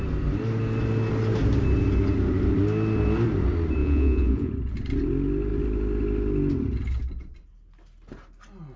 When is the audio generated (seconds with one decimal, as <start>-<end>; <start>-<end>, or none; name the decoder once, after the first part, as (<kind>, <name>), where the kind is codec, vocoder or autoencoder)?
3.8-4.5 (vocoder, Vocos)